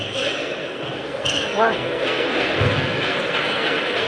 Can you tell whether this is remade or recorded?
remade